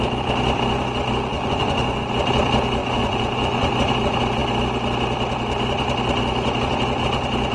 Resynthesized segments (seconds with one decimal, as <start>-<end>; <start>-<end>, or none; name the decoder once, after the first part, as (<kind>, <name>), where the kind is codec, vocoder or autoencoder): 1.3-2.1 (vocoder, Vocos); 2.8-3.7